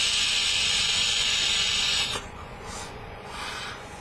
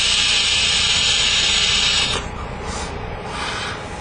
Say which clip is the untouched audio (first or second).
second